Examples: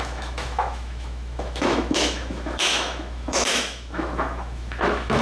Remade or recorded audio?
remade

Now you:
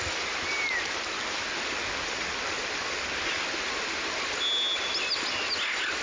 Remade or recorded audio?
recorded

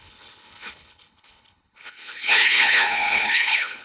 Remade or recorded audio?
remade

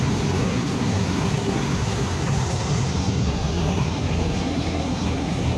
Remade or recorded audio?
remade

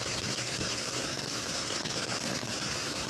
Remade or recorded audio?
remade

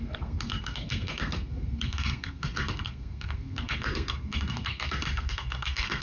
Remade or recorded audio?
remade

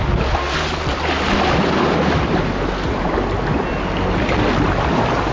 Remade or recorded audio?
recorded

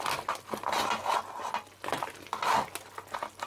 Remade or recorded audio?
recorded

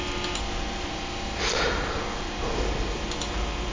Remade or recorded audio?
recorded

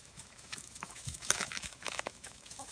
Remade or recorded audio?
remade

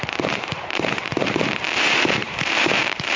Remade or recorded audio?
remade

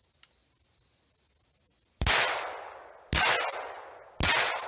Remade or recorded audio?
recorded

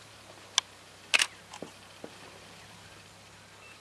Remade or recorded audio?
recorded